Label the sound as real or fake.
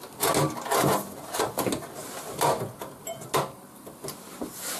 real